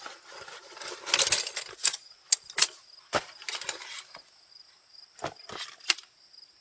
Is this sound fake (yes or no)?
no